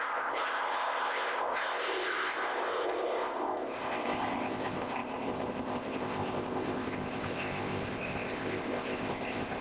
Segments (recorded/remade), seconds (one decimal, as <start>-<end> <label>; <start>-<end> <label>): 0.0-9.6 remade